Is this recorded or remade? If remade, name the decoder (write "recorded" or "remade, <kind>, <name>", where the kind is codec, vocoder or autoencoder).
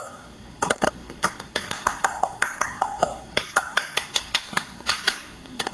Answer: remade, codec, SNAC